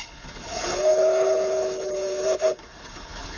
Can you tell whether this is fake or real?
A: fake